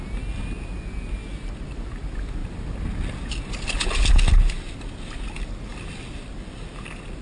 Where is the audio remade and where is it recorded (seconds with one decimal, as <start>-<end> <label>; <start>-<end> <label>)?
0.0-7.2 recorded